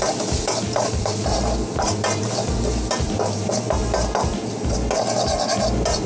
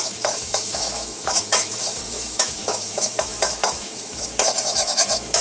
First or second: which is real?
first